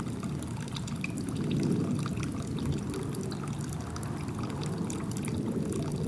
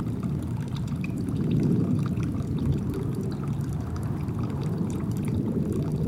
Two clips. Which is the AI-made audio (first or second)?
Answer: second